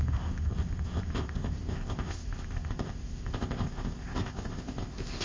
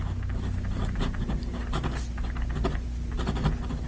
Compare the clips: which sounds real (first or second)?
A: second